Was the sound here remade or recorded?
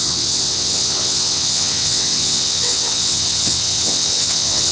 remade